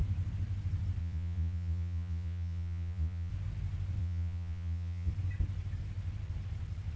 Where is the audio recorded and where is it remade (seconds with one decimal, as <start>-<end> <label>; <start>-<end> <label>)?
0.0-1.0 recorded; 1.0-3.3 remade; 3.3-4.0 recorded; 4.0-5.1 remade; 5.1-7.0 recorded